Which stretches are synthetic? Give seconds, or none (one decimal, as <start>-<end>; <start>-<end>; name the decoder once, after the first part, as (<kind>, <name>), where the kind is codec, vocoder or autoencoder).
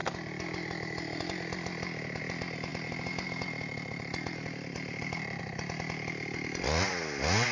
2.7-5.4 (vocoder, BigVGAN v2)